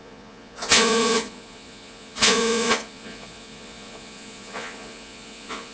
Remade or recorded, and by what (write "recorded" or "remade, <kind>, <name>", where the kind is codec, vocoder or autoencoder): remade, vocoder, Vocos